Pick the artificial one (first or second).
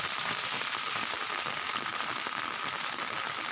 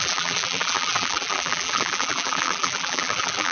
second